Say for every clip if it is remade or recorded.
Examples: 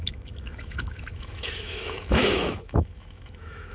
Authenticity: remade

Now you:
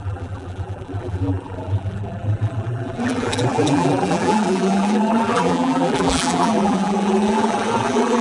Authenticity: remade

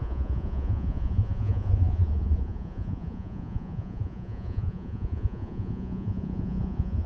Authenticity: remade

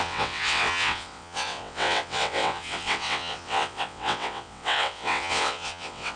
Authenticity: remade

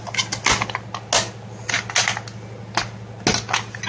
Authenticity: recorded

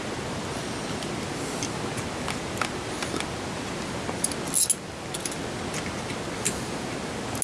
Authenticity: recorded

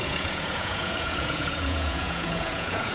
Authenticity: remade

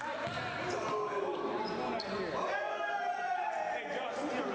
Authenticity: recorded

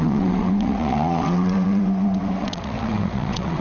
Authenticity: remade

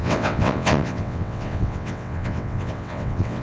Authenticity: remade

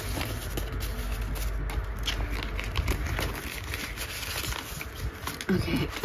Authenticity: recorded